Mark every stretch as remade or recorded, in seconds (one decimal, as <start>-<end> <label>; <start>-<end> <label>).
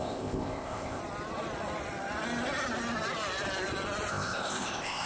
0.0-1.0 remade; 1.0-4.1 recorded; 4.1-5.1 remade